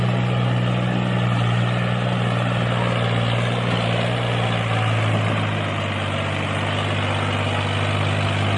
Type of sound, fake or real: real